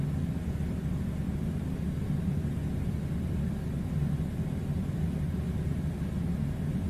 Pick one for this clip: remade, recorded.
recorded